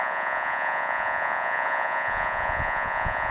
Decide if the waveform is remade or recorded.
remade